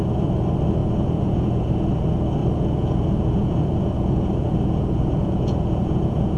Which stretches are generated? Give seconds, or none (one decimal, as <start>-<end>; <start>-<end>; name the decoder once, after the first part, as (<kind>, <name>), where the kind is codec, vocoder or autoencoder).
0.8-1.7 (vocoder, Vocos); 2.4-6.4